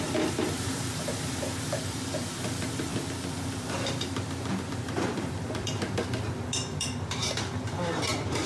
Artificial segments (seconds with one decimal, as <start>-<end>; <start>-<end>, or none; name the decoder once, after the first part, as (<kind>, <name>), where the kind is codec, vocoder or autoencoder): 0.0-2.9 (vocoder, BigVGAN v2); 4.7-8.5